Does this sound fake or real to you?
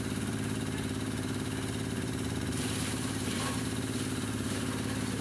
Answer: fake